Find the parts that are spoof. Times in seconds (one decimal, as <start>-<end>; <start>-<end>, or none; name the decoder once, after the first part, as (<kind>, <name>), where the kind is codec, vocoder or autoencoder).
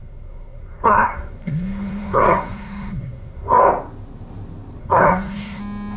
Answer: 0.0-3.6 (codec, SNAC); 4.8-5.6